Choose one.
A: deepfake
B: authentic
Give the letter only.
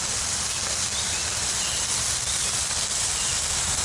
B